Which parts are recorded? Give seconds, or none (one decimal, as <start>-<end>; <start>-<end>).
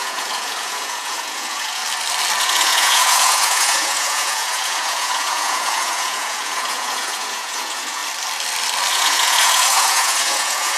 1.8-2.4; 8.0-8.9